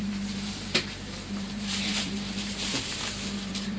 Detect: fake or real fake